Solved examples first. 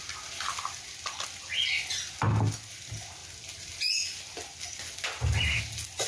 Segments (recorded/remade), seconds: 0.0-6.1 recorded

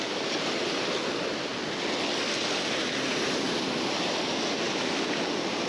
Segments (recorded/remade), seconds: 0.0-5.7 recorded

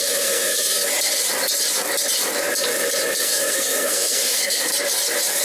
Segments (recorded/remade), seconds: 0.0-0.8 remade; 0.8-3.2 recorded; 3.2-4.7 remade; 4.7-5.4 recorded

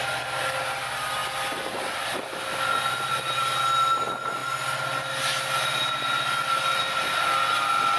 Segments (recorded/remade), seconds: 0.0-8.0 recorded

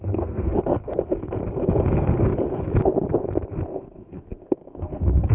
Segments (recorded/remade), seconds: 0.0-0.5 remade; 0.5-3.7 recorded; 3.7-5.3 remade

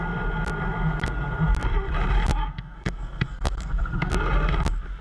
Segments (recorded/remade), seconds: 0.0-2.4 recorded; 2.4-4.1 remade; 4.1-5.0 recorded

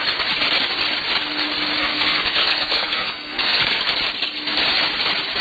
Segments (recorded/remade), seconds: 0.0-1.9 recorded; 1.9-3.8 remade; 3.8-5.4 recorded

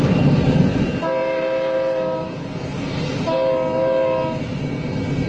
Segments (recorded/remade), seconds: 0.0-5.3 recorded